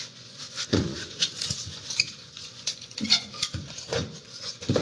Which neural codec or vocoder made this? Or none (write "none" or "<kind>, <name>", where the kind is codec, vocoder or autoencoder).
vocoder, Vocos